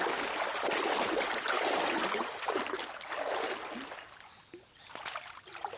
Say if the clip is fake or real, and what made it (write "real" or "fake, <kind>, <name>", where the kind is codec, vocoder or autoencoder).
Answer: real